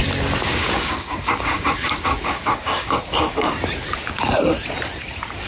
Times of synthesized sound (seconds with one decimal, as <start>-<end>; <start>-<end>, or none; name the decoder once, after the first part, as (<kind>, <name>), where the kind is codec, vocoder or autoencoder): 0.6-3.0 (codec, DAC)